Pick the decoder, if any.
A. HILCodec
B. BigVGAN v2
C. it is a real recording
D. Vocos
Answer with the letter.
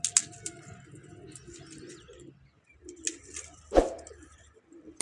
C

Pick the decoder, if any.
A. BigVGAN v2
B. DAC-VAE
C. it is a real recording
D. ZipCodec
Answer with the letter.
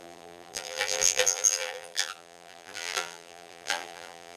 A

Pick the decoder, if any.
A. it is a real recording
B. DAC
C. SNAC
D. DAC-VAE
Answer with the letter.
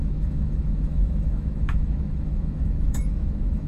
D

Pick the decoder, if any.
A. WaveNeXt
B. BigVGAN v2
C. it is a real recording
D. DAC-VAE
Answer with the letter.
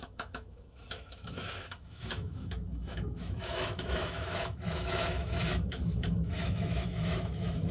D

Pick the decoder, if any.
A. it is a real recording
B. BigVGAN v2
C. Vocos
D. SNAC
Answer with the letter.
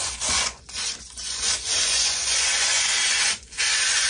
C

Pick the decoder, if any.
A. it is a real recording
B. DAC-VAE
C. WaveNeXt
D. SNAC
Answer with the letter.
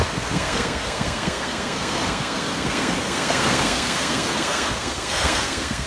D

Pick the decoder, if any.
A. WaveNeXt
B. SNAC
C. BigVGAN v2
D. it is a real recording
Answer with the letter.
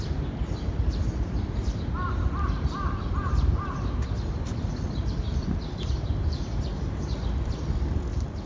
D